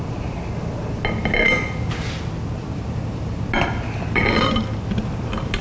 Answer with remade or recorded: recorded